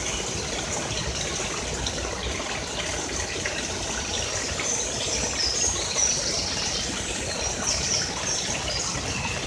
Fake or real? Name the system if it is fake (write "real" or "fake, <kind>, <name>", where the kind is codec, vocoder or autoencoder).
real